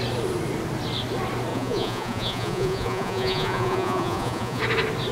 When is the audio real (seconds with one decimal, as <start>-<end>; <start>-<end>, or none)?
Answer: 0.0-1.5; 4.6-5.1